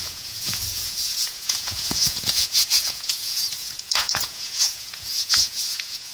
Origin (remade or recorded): remade